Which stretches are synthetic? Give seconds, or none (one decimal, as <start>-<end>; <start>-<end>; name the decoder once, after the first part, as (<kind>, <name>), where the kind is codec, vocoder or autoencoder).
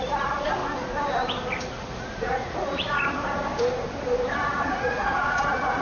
0.0-0.6 (vocoder, Vocos); 1.6-3.5; 4.3-5.8